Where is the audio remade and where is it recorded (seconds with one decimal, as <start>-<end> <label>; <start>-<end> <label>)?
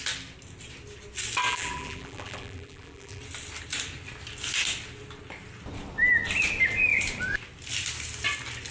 0.0-1.5 recorded; 1.5-3.2 remade; 3.2-8.7 recorded